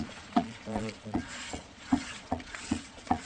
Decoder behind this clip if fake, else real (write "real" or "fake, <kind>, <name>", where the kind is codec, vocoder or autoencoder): fake, vocoder, Vocos